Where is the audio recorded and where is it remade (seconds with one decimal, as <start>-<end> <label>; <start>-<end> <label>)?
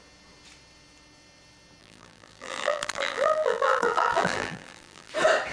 0.0-1.8 recorded; 1.8-5.1 remade; 5.1-5.5 recorded